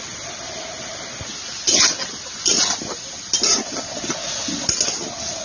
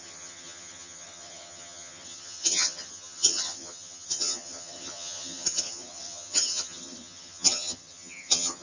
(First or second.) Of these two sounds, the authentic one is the first